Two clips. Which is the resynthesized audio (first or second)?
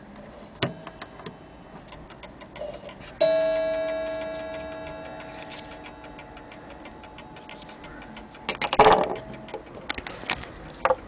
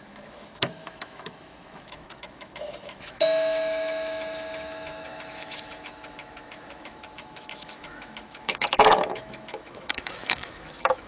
second